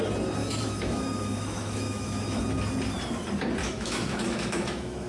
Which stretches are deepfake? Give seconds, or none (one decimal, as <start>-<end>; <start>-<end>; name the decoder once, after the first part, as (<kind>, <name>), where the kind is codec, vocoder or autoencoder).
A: 0.4-2.4 (autoencoder, DAC-VAE); 3.6-5.1